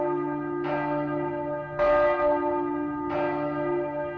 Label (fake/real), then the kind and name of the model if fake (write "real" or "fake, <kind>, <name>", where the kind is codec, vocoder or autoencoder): real